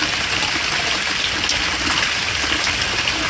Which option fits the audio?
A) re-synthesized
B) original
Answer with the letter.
B